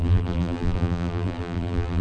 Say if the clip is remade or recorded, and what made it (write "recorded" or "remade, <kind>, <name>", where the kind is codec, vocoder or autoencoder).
remade, vocoder, BigVGAN v2